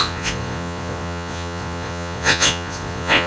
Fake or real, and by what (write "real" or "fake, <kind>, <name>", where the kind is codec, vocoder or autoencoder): fake, vocoder, Vocos